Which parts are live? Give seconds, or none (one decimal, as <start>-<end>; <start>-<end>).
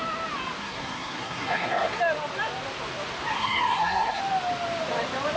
0.0-0.6; 2.0-3.3; 4.2-5.4